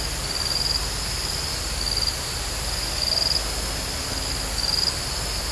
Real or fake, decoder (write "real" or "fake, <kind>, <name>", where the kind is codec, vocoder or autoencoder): real